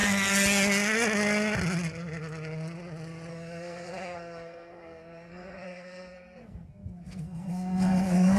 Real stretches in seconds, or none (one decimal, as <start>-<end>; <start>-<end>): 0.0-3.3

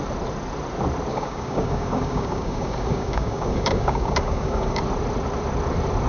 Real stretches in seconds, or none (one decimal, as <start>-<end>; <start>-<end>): 0.0-1.1; 4.8-6.1

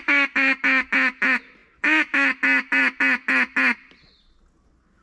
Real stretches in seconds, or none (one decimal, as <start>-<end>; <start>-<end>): 0.0-5.0

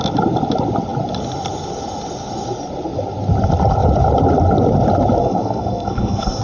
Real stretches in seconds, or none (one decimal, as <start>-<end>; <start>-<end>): 0.0-5.2

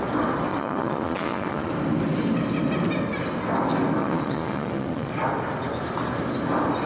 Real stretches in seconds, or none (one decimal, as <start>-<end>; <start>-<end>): 0.0-0.5; 1.7-4.0; 5.1-6.9